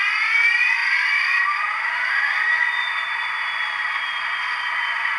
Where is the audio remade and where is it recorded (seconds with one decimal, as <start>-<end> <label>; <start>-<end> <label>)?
0.0-5.2 recorded